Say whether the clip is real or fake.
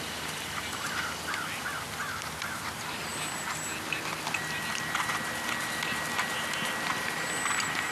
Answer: real